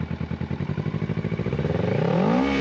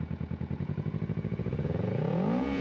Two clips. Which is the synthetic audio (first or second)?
second